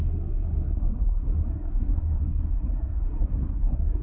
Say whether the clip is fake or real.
fake